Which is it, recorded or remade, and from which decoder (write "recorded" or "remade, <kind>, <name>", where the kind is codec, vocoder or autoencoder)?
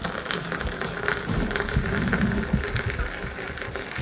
recorded